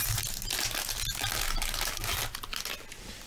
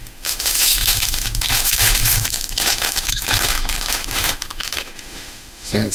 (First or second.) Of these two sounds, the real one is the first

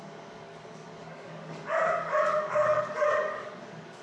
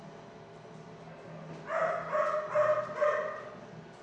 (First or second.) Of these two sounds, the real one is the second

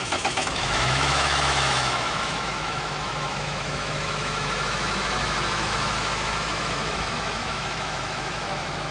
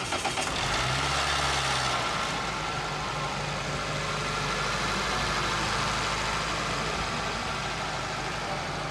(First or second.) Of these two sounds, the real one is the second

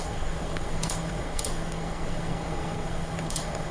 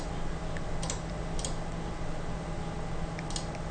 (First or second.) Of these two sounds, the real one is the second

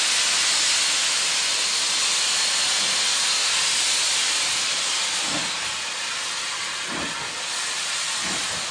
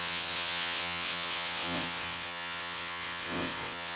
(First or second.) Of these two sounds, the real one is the first